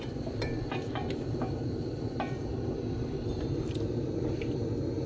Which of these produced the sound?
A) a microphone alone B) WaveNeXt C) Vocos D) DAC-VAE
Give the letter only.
A